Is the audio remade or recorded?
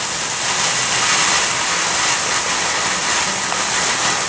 recorded